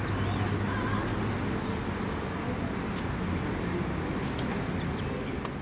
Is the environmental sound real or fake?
real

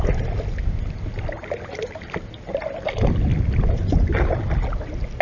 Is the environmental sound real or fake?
real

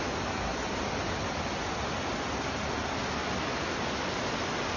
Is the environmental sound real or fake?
real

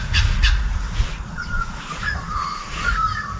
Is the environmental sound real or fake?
fake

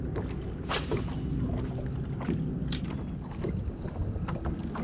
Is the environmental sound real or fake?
real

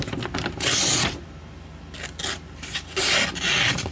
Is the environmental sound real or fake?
real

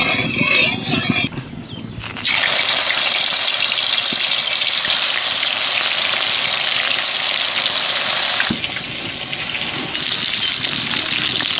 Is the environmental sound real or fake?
real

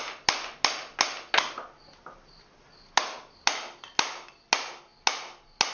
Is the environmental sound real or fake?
real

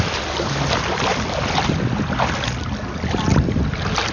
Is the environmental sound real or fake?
real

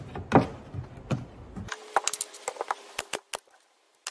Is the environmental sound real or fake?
real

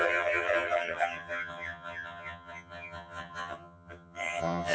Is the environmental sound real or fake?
fake